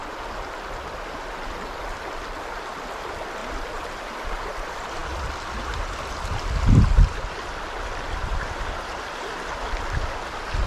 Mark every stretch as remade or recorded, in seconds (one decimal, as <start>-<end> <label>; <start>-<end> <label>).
0.0-3.4 recorded; 3.4-4.0 remade; 4.0-10.7 recorded